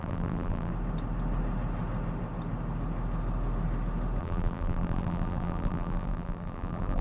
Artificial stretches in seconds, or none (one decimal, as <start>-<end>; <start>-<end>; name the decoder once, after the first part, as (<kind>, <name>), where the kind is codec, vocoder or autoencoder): 0.0-0.7 (vocoder, BigVGAN v2); 4.2-7.0